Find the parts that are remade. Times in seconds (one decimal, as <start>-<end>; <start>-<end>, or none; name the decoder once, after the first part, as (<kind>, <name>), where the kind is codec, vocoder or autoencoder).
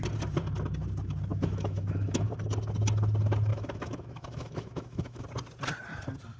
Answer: 1.3-2.3 (autoencoder, DAC-VAE); 3.5-5.2